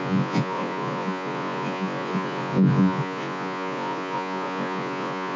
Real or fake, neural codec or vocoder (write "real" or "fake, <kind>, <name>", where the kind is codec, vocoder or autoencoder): fake, vocoder, Vocos